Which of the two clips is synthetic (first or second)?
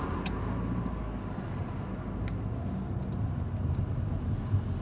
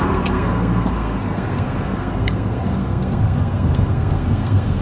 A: second